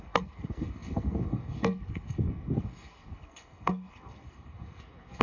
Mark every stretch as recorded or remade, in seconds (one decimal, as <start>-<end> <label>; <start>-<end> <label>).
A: 0.0-5.2 remade